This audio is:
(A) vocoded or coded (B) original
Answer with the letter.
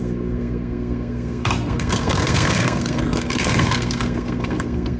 A